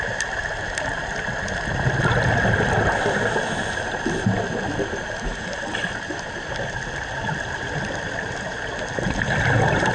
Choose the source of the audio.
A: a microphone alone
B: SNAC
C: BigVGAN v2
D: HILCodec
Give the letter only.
A